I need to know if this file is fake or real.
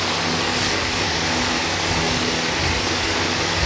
fake